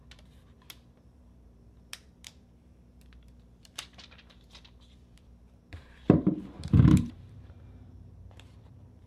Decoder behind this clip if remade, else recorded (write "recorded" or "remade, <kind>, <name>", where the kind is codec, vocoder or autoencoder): remade, vocoder, BigVGAN v2